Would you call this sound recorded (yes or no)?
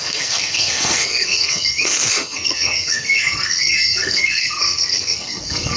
no